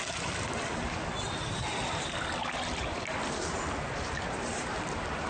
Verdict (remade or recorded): recorded